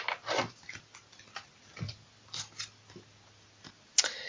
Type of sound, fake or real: real